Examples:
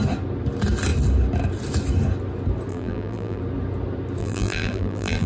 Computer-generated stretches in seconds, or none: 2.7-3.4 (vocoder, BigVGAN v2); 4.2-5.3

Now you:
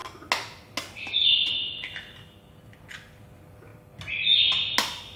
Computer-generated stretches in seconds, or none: none